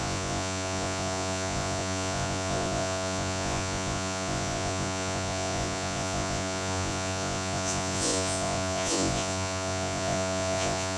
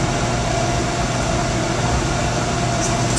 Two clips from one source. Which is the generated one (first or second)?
first